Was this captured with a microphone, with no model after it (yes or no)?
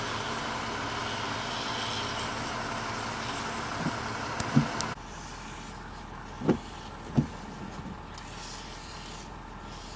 yes